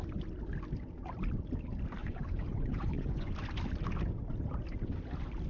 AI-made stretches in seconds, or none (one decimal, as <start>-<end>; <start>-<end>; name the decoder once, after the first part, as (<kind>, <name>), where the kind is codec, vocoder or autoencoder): 2.0-3.3 (vocoder, Vocos)